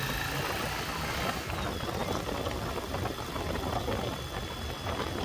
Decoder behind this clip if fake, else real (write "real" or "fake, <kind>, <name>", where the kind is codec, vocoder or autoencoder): real